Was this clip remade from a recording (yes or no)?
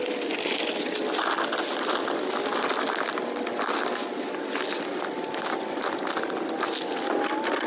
no